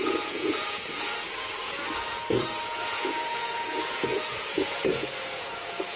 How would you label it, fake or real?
fake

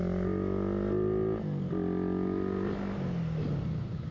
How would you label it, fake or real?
real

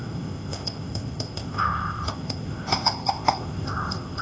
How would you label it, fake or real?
fake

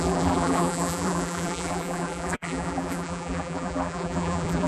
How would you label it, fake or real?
fake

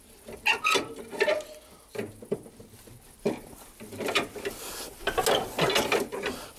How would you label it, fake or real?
real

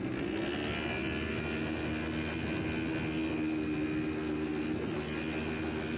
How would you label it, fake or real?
real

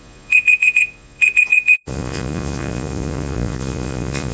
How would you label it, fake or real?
fake